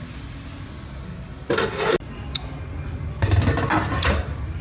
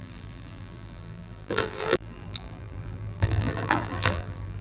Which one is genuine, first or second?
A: first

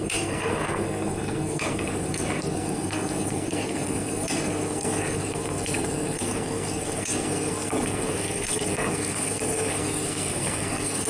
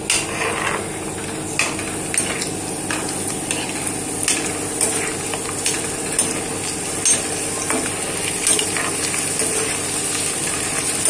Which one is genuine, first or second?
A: second